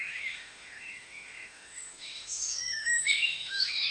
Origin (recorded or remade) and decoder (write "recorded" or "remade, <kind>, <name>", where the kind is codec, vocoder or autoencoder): remade, autoencoder, DAC-VAE